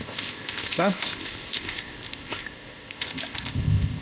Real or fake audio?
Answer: fake